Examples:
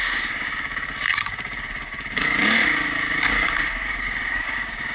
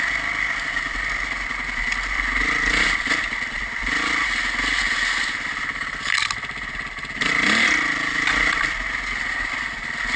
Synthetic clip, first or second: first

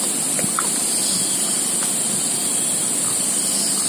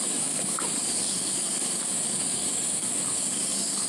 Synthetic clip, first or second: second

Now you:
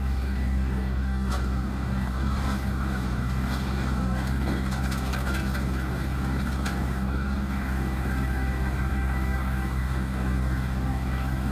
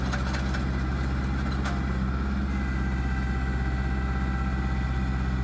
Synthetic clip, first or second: first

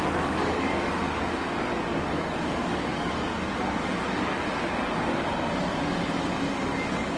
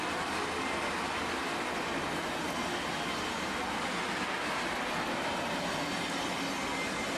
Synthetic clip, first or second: first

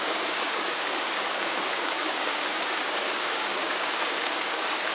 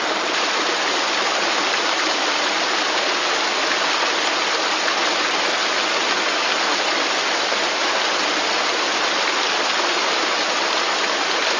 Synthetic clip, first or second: first